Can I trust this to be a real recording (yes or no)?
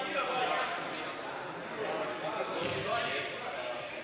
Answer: yes